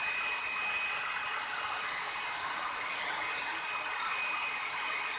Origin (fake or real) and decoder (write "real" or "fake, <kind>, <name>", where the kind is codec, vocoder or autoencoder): real